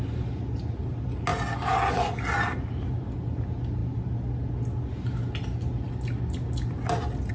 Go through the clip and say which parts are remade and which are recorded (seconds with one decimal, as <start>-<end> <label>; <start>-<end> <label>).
0.0-7.3 recorded